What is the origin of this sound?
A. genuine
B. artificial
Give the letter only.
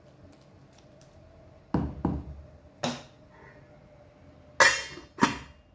A